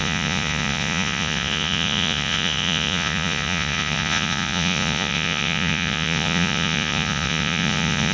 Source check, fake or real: fake